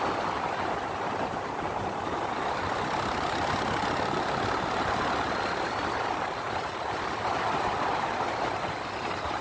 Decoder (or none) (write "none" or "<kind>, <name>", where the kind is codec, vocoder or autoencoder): none